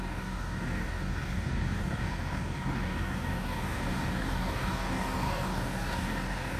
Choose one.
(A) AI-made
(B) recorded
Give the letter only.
A